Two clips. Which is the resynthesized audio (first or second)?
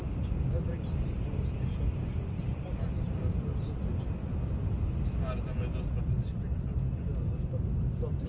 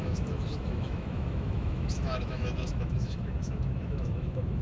second